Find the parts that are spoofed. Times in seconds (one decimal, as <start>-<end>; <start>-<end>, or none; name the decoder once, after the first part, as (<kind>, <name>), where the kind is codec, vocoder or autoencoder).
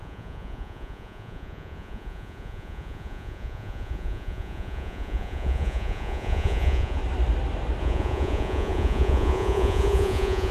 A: 0.0-7.0 (vocoder, Vocos); 7.8-10.5